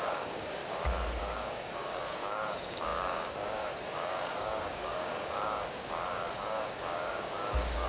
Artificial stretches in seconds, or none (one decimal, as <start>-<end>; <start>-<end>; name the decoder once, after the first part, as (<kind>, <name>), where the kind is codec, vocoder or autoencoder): 0.0-0.6 (codec, DAC); 1.2-7.9